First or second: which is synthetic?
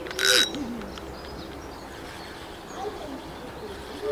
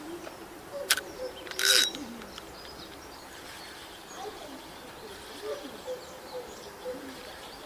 second